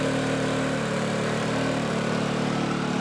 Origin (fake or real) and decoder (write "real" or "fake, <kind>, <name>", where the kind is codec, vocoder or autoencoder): fake, vocoder, BigVGAN v2